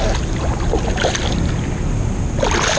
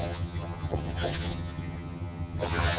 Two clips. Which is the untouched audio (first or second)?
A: first